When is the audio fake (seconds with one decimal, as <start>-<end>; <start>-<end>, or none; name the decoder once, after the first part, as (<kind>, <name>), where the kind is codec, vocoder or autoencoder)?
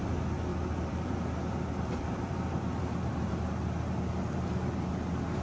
0.5-3.5 (vocoder, BigVGAN v2)